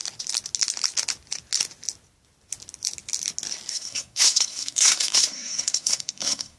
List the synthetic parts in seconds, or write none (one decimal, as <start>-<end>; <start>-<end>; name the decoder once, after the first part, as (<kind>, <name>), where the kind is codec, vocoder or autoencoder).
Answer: 3.7-6.6 (codec, SNAC)